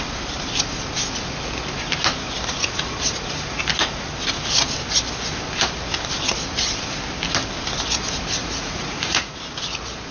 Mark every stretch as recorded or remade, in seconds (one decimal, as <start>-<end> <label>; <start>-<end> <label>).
0.0-8.4 recorded; 8.4-9.3 remade; 9.3-10.1 recorded